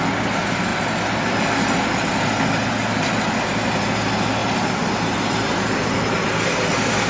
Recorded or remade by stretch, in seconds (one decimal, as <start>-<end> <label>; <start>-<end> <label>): 0.0-7.1 recorded